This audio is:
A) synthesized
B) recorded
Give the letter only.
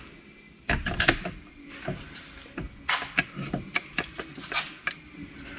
B